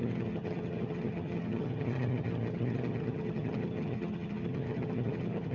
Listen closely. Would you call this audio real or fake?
fake